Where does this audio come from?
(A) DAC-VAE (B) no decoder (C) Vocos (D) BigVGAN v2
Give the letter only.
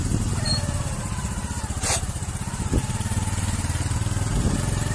D